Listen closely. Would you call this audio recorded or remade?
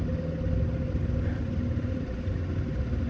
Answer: recorded